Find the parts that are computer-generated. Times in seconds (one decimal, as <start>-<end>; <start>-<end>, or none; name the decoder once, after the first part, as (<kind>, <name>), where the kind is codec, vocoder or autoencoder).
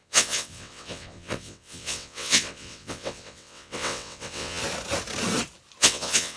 0.0-4.6 (vocoder, WaveNeXt); 5.8-6.4